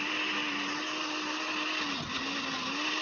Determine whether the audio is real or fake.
real